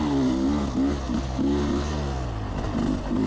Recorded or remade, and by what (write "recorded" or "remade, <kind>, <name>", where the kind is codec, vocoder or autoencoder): recorded